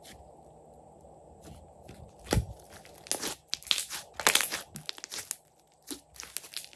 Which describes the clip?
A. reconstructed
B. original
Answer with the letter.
B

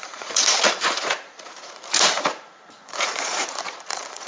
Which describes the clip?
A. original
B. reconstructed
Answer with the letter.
B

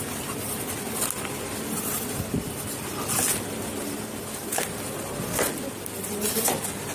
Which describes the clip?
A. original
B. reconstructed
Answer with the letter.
A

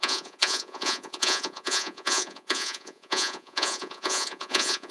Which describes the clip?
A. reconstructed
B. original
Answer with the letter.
A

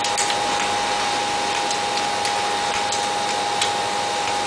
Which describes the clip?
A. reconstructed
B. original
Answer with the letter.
B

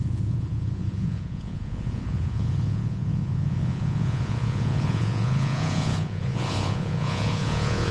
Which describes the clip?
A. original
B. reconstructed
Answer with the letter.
B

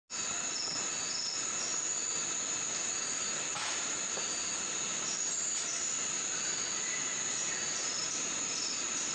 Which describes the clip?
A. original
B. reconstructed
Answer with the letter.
A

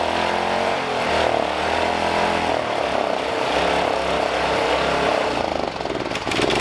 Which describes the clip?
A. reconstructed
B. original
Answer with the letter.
B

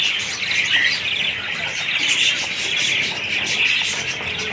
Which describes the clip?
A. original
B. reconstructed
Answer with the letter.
A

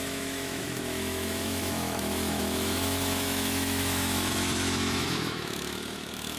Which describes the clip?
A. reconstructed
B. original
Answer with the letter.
A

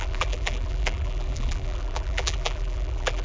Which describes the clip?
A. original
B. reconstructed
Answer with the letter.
B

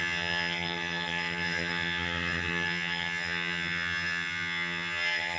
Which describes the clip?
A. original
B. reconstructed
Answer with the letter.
B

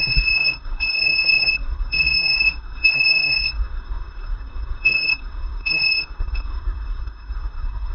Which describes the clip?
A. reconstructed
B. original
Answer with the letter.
A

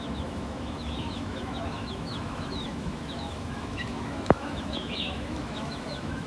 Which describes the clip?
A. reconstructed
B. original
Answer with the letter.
A